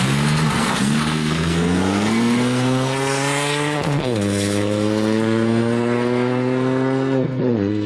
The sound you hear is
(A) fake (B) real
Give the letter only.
A